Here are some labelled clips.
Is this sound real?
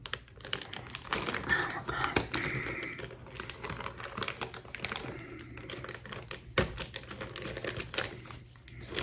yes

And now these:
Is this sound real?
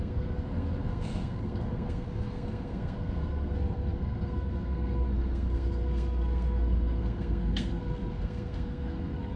no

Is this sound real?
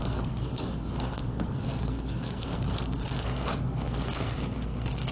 no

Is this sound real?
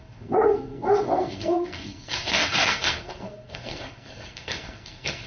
no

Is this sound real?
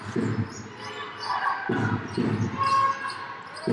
yes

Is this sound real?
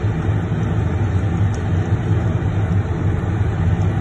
yes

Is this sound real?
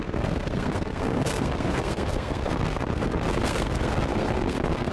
no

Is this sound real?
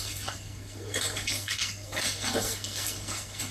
no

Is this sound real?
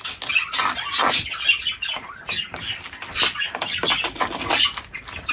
yes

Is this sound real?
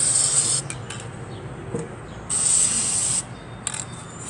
yes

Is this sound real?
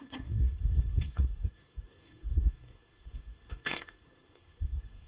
no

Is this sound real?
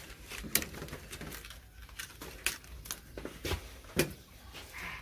yes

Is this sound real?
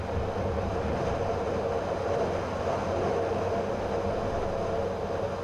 yes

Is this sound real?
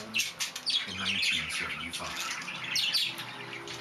yes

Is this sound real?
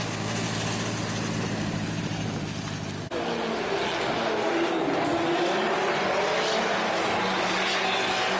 yes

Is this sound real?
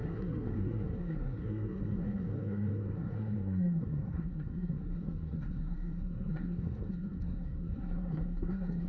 no